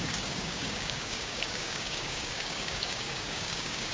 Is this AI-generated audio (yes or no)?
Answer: yes